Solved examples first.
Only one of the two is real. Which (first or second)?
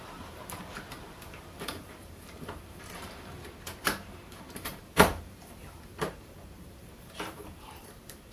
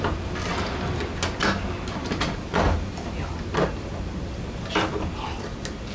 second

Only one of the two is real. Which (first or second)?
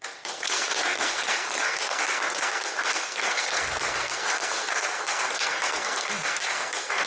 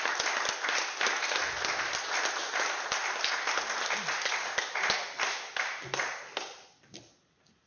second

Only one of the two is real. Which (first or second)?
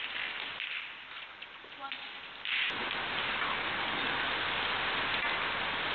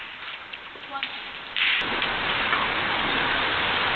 first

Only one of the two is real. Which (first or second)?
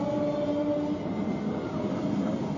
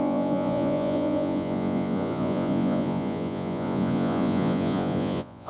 first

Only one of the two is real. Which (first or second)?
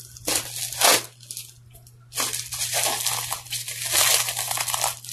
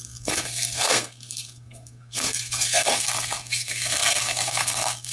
first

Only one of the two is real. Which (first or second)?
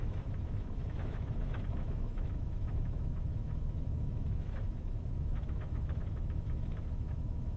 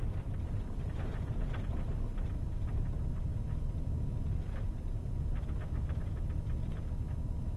second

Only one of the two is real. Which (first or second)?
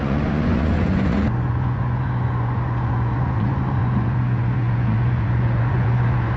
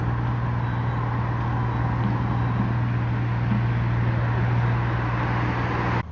second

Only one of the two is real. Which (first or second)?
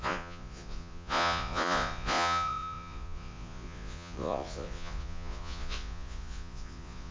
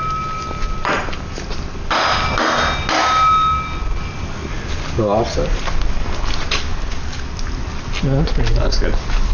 second